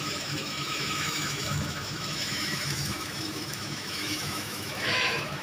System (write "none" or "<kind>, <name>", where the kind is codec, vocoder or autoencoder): autoencoder, DAC-VAE